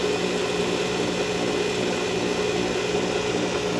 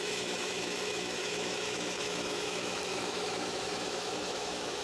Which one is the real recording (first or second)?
first